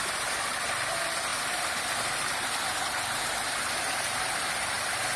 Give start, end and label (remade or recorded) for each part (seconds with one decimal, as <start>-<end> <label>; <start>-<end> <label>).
0.0-5.2 recorded